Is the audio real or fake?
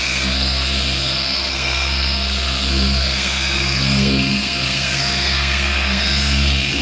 fake